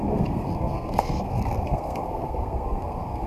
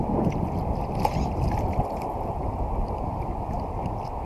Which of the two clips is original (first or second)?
second